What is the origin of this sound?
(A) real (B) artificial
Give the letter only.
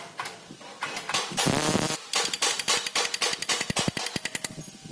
A